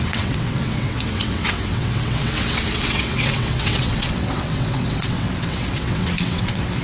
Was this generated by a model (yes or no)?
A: yes